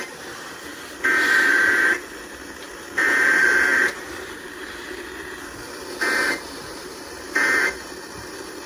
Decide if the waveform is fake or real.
fake